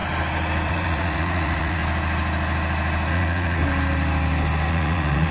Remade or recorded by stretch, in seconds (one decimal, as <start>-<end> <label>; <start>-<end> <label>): 0.0-0.7 recorded; 0.7-1.8 remade; 1.8-3.1 recorded; 3.1-3.6 remade; 3.6-4.7 recorded; 4.7-5.3 remade